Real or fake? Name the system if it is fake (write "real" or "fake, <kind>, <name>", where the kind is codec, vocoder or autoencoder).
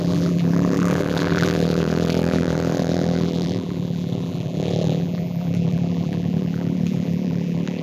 fake, vocoder, BigVGAN v2